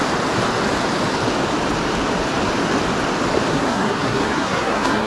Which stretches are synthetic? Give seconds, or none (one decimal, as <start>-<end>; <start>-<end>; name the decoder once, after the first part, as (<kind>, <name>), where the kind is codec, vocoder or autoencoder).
3.5-5.1 (codec, SNAC)